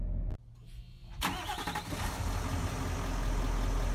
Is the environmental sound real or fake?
real